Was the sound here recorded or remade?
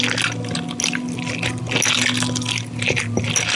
recorded